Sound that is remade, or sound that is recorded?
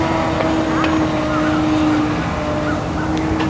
recorded